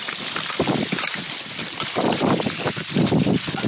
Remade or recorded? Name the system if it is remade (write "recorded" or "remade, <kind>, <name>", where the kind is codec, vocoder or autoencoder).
recorded